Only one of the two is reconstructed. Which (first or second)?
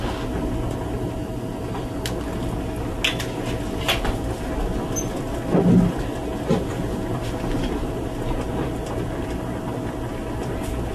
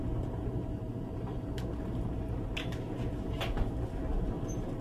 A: second